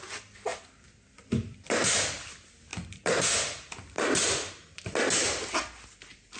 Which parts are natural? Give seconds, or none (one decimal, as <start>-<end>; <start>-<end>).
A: 0.0-0.5; 1.9-2.7; 4.8-6.4